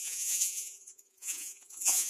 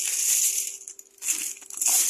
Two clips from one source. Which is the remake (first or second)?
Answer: first